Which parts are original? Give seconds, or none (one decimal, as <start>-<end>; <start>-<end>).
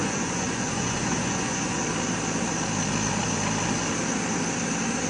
1.8-5.1